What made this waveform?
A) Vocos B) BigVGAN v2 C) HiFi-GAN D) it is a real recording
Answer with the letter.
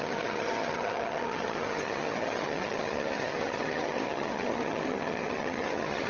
C